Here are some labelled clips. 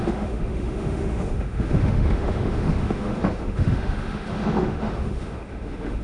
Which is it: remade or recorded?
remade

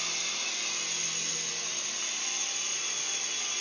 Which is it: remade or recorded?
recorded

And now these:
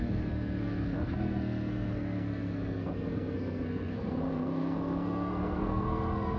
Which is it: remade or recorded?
remade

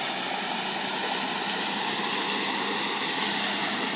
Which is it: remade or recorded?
recorded